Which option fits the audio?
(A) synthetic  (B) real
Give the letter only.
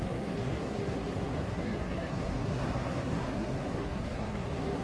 A